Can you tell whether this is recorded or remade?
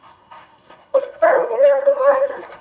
remade